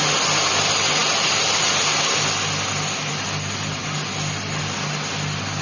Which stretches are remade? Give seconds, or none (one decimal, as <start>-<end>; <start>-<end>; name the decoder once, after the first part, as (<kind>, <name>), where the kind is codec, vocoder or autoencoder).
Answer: 3.8-4.6 (vocoder, BigVGAN v2)